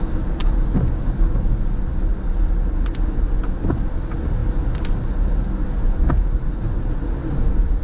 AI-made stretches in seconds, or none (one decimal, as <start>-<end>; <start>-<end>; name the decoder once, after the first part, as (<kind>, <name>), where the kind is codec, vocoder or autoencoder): none